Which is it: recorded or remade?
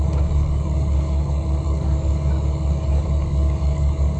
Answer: remade